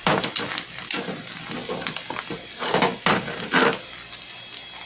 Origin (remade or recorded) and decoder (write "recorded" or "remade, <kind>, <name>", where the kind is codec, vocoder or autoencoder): recorded